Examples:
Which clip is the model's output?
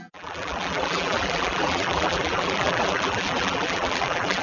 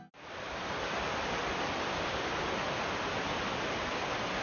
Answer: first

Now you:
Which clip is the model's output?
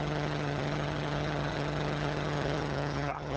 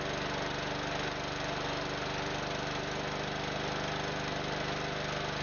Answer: first